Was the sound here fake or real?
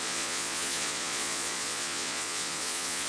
fake